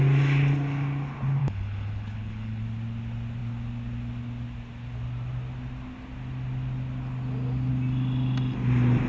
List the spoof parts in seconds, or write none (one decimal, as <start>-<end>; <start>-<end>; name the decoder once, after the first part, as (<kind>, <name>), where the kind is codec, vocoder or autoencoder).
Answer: 1.4-2.6 (codec, HILCodec)